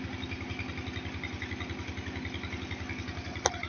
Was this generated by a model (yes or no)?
no